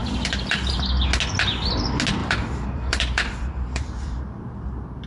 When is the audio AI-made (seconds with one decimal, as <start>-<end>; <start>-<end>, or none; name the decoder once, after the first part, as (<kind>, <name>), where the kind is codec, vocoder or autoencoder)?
0.0-0.9 (vocoder, BigVGAN v2); 2.2-4.4